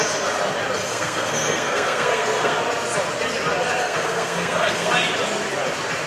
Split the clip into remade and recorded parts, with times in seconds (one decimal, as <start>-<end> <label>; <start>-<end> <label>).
0.0-0.8 recorded; 0.8-2.6 remade; 2.6-3.8 recorded; 3.8-4.9 remade; 4.9-6.1 recorded